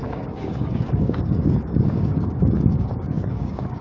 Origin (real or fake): fake